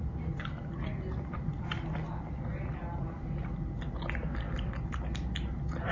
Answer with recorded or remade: recorded